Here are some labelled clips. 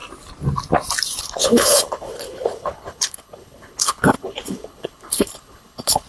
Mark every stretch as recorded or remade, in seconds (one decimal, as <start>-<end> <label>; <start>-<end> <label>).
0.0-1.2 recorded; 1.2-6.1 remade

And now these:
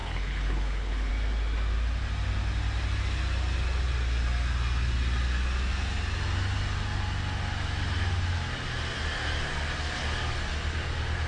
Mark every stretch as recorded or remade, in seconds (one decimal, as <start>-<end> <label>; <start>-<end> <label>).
0.0-1.1 remade; 1.1-11.3 recorded

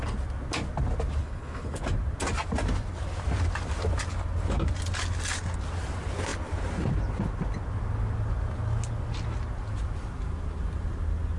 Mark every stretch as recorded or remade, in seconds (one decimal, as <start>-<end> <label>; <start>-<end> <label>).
0.0-1.2 recorded; 1.2-1.8 remade; 1.8-11.4 recorded